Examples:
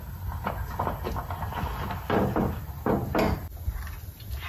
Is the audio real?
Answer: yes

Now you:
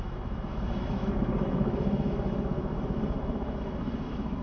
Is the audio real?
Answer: no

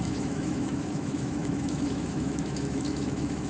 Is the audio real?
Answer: no